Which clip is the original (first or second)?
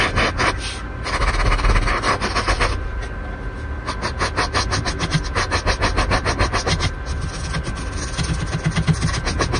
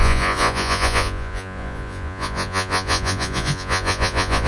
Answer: first